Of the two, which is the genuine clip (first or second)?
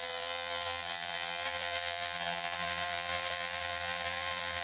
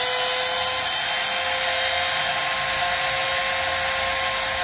second